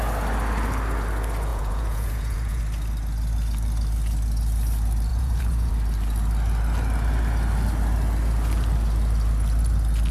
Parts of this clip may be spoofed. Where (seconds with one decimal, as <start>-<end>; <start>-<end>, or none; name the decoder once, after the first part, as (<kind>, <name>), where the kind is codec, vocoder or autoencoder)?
1.5-2.6 (vocoder, Vocos); 5.1-5.7